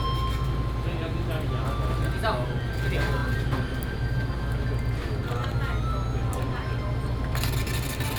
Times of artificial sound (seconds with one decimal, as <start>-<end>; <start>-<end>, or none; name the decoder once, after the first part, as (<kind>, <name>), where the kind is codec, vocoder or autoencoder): none